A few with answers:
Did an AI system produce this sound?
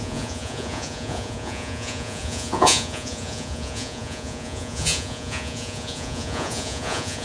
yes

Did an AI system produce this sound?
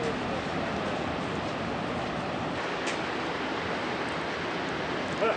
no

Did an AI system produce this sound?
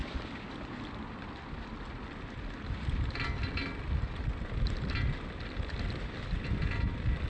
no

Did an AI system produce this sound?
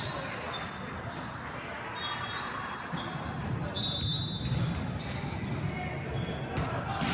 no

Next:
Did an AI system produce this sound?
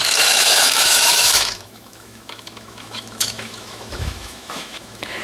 yes